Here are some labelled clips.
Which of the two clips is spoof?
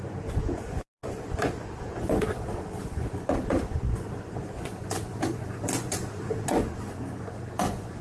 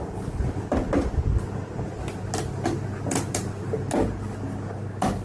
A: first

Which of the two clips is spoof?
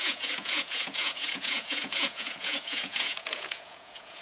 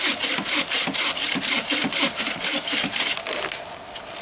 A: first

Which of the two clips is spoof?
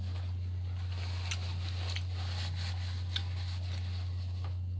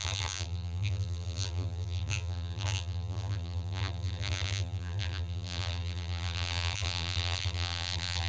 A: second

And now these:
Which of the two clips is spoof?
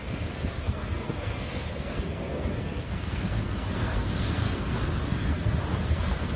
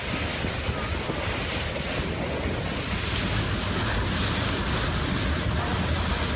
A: first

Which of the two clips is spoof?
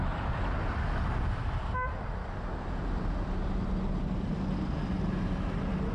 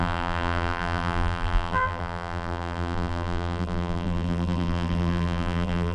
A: second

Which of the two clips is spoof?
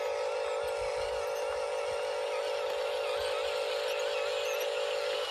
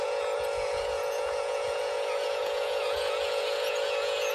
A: second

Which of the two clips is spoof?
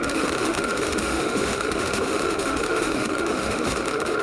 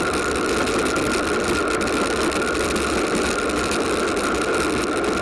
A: first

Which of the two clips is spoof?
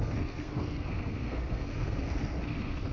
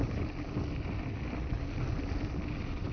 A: first